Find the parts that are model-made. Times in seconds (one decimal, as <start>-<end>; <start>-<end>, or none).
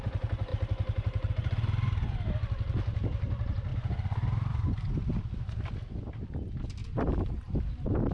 0.5-1.3; 6.8-7.6